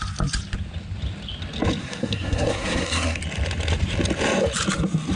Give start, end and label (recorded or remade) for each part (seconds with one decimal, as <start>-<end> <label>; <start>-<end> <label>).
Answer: 0.0-1.8 recorded; 1.8-3.2 remade; 3.2-5.2 recorded